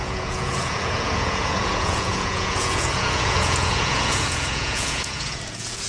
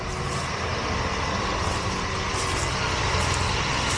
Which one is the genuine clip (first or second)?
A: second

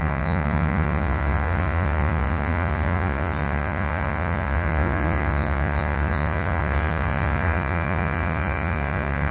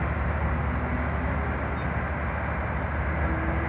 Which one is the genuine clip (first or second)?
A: second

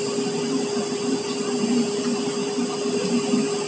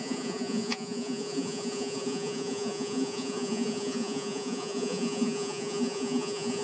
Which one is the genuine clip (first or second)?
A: first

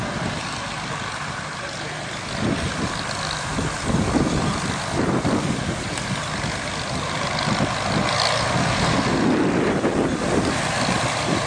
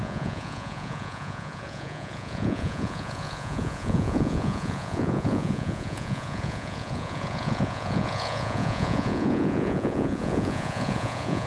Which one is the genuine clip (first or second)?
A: first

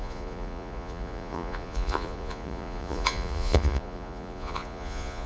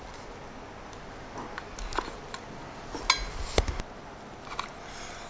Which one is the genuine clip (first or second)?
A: second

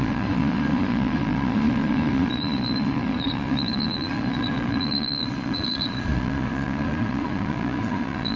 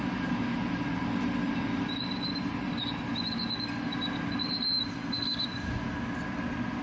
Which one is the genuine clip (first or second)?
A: second